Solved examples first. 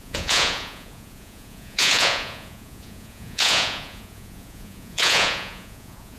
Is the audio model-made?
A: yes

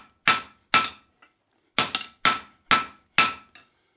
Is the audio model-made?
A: no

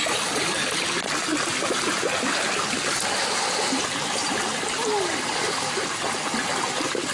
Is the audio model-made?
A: no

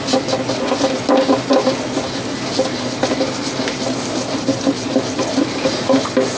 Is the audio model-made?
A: no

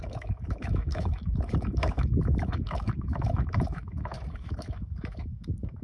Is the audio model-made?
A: yes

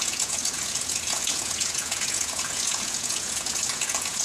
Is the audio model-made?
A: yes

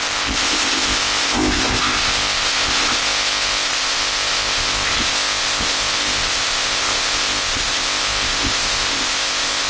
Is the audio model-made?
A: yes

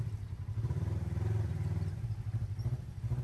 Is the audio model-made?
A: no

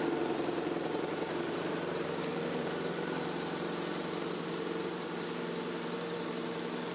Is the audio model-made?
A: yes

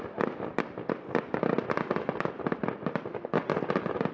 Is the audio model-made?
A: no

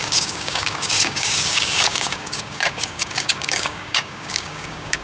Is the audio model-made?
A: yes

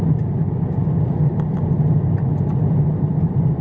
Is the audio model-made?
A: no